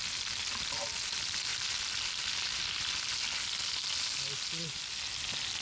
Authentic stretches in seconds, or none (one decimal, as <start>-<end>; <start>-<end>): 0.0-5.6